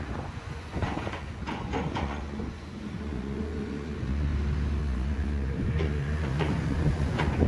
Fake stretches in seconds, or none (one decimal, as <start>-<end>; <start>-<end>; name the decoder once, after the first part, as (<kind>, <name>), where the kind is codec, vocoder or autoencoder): 0.0-4.3 (vocoder, Vocos); 4.8-7.5